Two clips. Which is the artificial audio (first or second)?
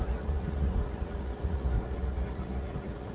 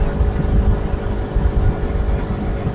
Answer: first